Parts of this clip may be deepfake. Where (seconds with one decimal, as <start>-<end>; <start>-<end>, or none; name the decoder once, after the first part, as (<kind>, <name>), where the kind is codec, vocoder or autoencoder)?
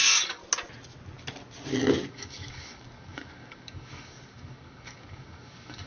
0.0-0.4 (codec, DAC); 2.1-5.9